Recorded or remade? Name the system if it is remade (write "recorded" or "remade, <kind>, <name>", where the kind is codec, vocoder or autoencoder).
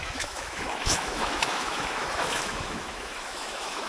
remade, autoencoder, DAC-VAE